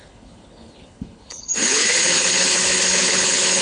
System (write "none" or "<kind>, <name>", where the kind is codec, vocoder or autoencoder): codec, HILCodec